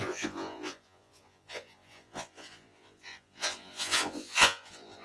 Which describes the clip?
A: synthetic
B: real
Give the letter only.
A